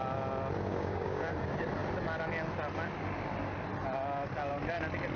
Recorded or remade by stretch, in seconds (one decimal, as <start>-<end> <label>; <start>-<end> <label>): 0.0-0.7 recorded; 0.7-1.3 remade; 1.3-5.2 recorded